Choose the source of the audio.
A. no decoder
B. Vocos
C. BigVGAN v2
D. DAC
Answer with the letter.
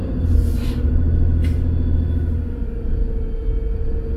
A